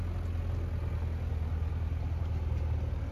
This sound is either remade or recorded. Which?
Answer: recorded